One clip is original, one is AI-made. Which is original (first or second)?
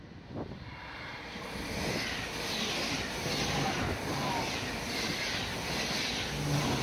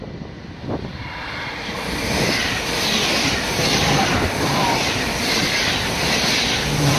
first